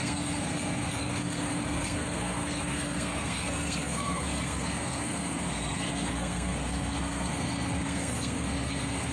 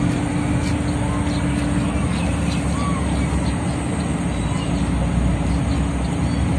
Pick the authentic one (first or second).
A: second